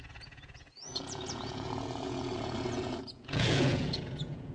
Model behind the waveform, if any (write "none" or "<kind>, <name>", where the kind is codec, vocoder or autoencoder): vocoder, Vocos